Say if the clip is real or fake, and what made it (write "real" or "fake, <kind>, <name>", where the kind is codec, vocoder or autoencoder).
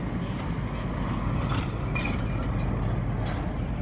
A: real